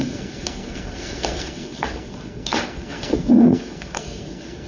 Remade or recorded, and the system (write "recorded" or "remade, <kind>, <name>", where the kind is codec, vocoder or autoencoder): remade, codec, SNAC